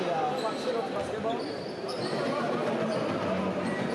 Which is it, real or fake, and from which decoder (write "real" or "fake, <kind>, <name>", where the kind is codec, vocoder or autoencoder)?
real